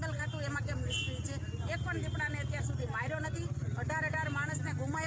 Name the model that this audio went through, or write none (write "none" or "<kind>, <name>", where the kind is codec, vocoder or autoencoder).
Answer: none